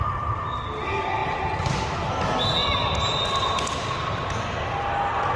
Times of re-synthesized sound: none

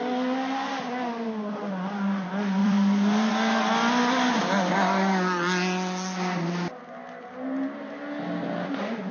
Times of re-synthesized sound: 2.6-3.3

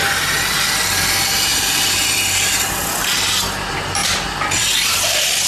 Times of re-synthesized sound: 1.5-2.1